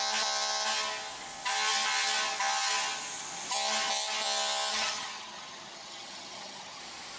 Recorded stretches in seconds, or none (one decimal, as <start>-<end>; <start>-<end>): 0.0-4.7; 6.8-7.2